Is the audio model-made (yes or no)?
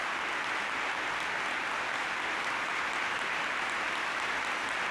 no